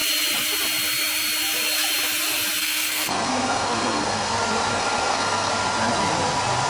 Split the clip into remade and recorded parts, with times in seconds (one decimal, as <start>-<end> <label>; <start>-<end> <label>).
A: 0.0-2.6 recorded; 2.6-4.3 remade; 4.3-4.7 recorded; 4.7-5.5 remade; 5.5-6.7 recorded

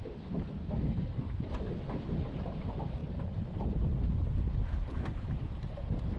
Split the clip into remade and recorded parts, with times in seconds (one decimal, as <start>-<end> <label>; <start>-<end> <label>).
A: 0.0-0.6 recorded; 0.6-1.2 remade; 1.2-6.2 recorded

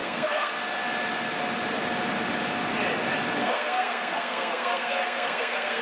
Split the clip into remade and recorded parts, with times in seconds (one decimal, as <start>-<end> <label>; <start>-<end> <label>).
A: 0.0-0.5 remade; 0.5-3.4 recorded; 3.4-5.8 remade

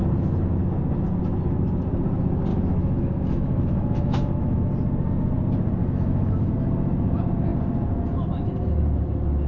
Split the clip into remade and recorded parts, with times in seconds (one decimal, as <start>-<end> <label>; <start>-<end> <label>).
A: 0.0-2.5 recorded; 2.5-4.7 remade; 4.7-5.8 recorded; 5.8-6.5 remade; 6.5-9.5 recorded

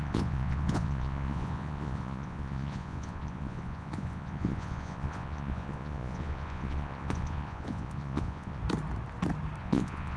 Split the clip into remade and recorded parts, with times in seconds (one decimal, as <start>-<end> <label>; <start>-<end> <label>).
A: 0.0-8.6 remade; 8.6-9.6 recorded; 9.6-10.2 remade

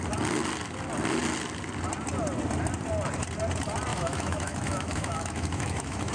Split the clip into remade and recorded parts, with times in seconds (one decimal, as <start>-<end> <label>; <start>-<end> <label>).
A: 0.0-3.9 recorded; 3.9-6.1 remade

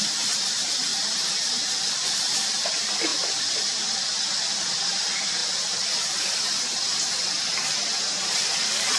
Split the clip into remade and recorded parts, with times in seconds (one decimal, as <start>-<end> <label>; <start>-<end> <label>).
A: 0.0-0.9 recorded; 0.9-1.5 remade; 1.5-9.0 recorded

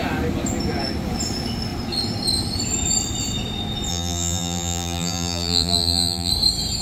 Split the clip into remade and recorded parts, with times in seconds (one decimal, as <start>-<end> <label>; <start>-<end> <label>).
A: 0.0-3.9 recorded; 3.9-6.3 remade; 6.3-6.8 recorded